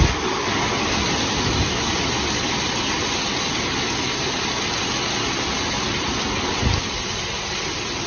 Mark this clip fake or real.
real